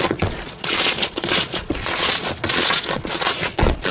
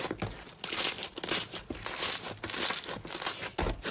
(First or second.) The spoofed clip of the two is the first